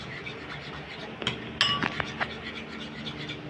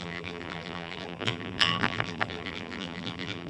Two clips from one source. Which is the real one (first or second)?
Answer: first